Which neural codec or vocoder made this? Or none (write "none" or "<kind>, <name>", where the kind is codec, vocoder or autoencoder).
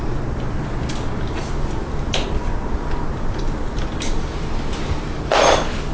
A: none